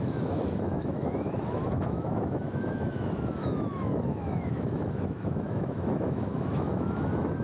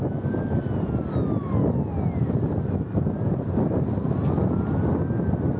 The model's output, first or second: first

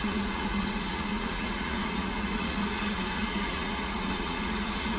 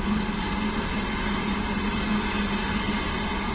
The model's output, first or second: first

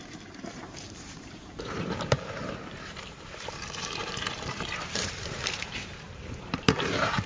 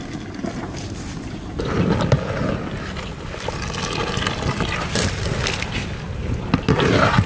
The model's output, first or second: first